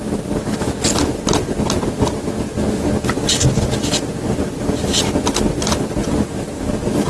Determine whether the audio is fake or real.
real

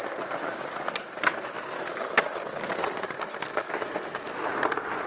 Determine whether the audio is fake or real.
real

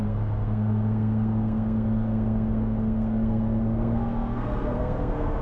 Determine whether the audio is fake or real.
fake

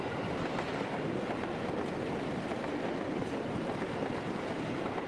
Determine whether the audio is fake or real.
real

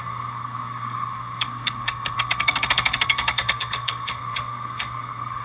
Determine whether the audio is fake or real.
fake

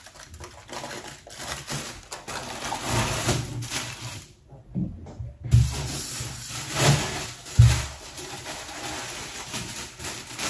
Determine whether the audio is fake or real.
real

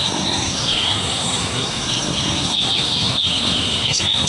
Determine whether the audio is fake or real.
fake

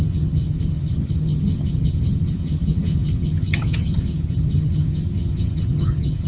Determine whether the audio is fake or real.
fake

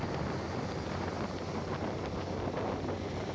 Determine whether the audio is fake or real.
real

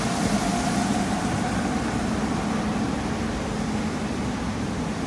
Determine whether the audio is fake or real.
real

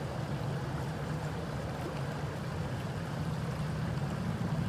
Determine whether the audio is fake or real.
real